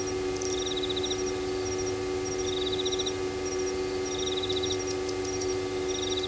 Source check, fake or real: real